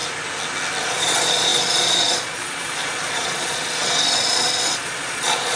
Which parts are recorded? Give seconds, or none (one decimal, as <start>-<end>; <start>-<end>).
0.0-0.8